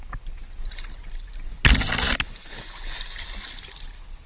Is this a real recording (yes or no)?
yes